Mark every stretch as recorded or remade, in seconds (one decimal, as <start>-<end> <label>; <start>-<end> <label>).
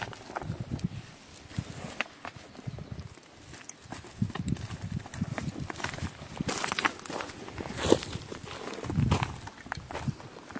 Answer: 0.0-10.6 recorded